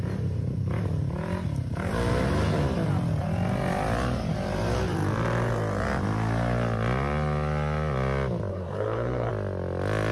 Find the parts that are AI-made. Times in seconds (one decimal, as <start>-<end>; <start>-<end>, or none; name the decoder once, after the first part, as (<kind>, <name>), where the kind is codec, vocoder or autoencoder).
8.5-9.3 (codec, SNAC)